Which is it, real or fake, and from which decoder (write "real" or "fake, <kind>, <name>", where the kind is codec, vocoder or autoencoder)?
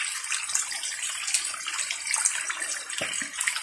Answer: real